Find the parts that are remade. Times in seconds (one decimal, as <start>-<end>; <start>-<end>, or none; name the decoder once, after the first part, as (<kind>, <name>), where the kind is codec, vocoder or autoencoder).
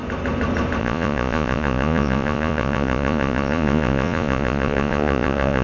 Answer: 0.8-5.6 (vocoder, Vocos)